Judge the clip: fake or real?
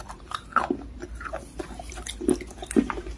real